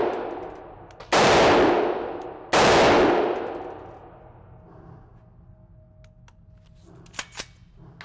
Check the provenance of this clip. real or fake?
real